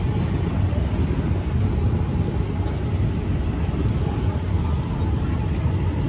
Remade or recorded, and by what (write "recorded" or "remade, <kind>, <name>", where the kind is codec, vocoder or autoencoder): recorded